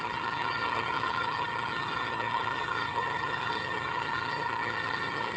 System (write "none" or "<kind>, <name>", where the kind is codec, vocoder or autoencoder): vocoder, HiFi-GAN